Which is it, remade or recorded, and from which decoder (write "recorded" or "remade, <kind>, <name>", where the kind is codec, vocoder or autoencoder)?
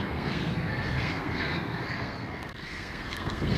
remade, codec, SNAC